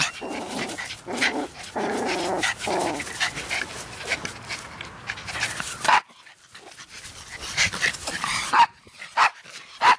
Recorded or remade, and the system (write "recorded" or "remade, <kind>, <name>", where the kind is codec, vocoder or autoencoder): recorded